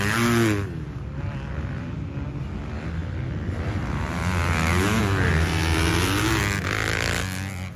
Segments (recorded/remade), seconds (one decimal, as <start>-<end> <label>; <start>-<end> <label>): 0.0-7.8 recorded